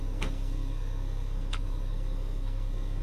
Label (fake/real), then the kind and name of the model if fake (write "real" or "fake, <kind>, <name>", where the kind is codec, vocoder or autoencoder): fake, codec, SNAC